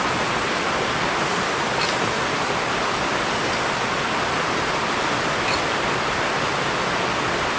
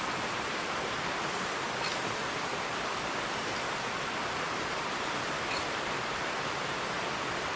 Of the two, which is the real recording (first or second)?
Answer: first